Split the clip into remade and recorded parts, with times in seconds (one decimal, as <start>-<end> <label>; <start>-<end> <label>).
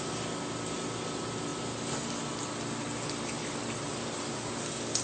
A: 0.0-5.0 recorded